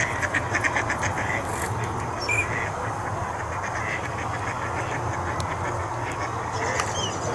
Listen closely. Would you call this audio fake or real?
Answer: real